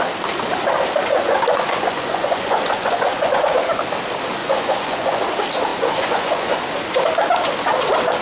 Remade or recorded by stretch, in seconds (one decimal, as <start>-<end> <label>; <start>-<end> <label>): 0.0-1.1 recorded; 1.1-3.8 remade; 3.8-4.4 recorded; 4.4-5.2 remade; 5.2-5.7 recorded; 5.7-6.6 remade; 6.6-8.2 recorded